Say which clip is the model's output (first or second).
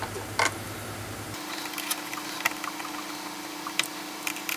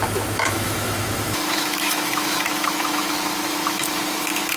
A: second